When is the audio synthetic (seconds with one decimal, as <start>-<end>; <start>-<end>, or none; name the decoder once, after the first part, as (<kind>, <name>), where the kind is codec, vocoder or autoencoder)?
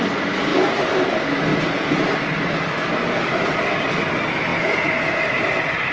1.5-2.0 (vocoder, Vocos); 4.5-5.4